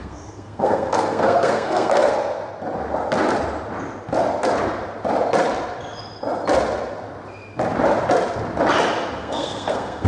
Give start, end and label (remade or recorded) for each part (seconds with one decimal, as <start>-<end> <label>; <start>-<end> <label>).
0.0-2.1 remade; 2.1-9.2 recorded; 9.2-10.1 remade